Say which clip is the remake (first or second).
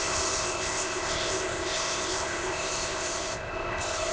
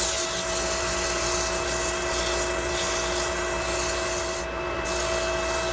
first